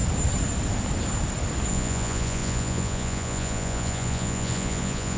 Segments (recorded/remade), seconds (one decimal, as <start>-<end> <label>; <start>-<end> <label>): 0.0-1.7 recorded; 1.7-5.2 remade